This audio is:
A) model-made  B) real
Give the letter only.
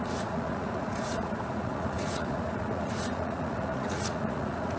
A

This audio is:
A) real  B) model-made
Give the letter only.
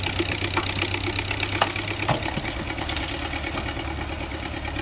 A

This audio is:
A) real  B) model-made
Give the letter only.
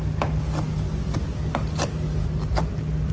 A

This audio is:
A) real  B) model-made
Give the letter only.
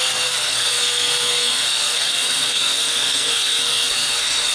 B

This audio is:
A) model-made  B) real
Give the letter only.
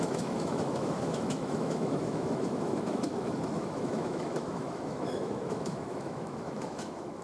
A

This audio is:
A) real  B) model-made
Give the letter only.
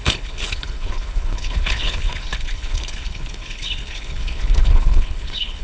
B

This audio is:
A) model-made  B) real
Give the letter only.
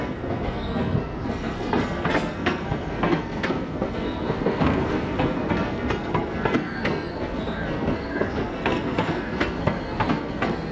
A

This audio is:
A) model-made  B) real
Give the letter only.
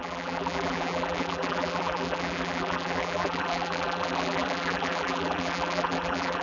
A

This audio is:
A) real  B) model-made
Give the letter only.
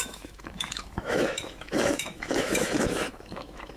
B